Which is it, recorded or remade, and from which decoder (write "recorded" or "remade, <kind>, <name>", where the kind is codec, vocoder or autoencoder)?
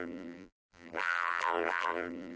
remade, vocoder, BigVGAN v2